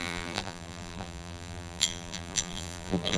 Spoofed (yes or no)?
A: yes